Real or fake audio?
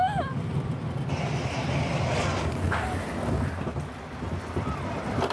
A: real